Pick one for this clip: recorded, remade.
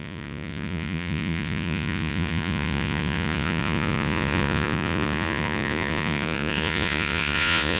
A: remade